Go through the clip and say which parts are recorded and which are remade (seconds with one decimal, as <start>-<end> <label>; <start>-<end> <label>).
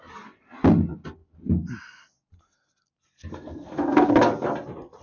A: 0.0-3.3 recorded; 3.3-4.1 remade; 4.1-5.0 recorded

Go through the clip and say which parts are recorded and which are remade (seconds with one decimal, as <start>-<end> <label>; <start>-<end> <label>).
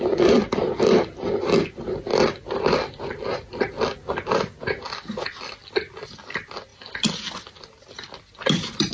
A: 0.0-8.9 recorded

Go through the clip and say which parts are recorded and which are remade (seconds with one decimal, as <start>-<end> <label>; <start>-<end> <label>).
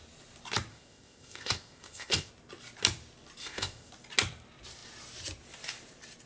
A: 0.0-0.7 recorded; 0.7-2.3 remade; 2.3-3.4 recorded; 3.4-3.9 remade; 3.9-6.3 recorded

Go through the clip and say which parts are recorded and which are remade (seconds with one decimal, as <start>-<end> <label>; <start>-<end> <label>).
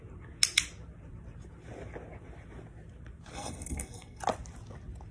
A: 0.0-3.3 recorded; 3.3-4.2 remade; 4.2-5.1 recorded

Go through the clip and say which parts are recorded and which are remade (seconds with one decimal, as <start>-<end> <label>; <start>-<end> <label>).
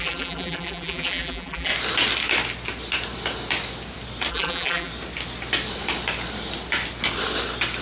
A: 0.0-1.7 remade; 1.7-4.3 recorded; 4.3-4.9 remade; 4.9-7.8 recorded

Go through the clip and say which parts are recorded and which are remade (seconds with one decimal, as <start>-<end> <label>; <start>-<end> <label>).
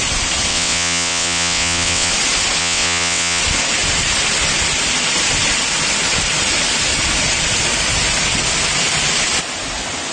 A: 0.0-0.5 recorded; 0.5-2.1 remade; 2.1-2.6 recorded; 2.6-3.4 remade; 3.4-10.1 recorded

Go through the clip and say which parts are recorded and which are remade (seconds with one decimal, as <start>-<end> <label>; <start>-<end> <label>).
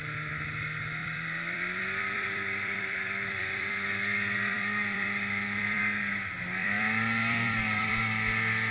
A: 0.0-1.0 recorded; 1.0-6.1 remade; 6.1-6.6 recorded; 6.6-8.0 remade; 8.0-8.7 recorded